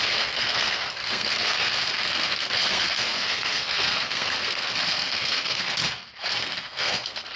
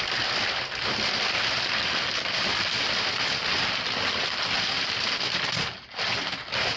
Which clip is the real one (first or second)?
second